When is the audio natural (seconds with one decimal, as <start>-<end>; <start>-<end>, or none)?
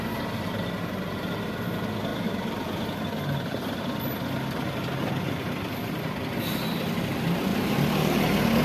0.0-8.6